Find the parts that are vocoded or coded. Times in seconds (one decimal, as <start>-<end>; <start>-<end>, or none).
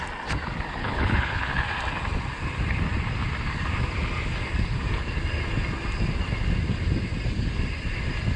0.8-1.6